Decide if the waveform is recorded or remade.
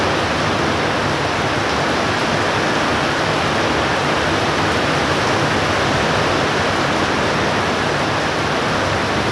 recorded